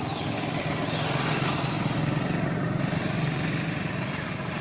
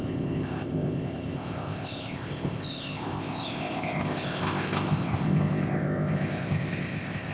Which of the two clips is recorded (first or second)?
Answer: first